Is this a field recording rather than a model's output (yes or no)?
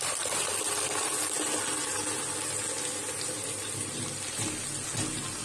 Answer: yes